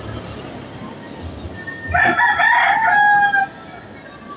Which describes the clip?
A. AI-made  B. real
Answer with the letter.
B